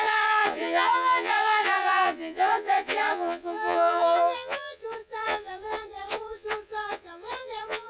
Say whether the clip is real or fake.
fake